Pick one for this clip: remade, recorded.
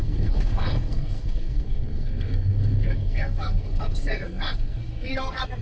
remade